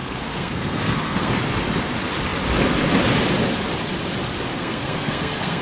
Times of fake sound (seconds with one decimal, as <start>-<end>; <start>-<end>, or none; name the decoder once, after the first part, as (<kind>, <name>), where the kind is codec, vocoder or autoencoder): 0.0-1.3 (codec, SNAC); 4.5-5.6